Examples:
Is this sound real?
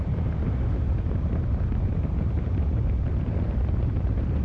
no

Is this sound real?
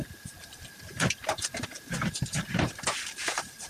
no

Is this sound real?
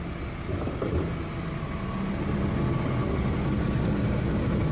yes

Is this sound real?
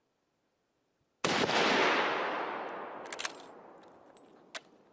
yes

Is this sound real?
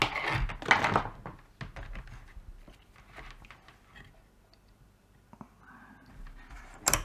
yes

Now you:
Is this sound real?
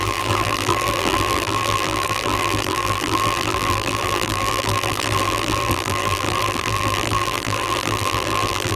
no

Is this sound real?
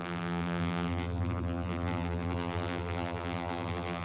no